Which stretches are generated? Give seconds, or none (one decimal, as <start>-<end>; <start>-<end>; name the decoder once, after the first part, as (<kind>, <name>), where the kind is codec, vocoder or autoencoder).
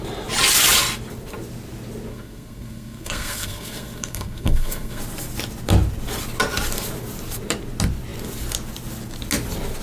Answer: 2.1-5.0 (codec, SNAC)